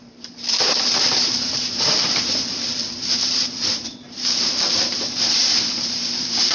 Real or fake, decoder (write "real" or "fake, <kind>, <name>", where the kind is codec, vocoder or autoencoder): fake, vocoder, BigVGAN v2